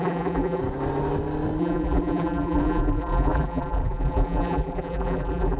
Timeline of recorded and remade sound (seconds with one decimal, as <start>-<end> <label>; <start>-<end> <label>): 0.0-0.6 remade; 0.6-1.6 recorded; 1.6-5.6 remade